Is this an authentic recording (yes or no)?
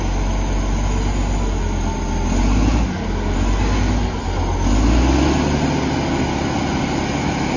yes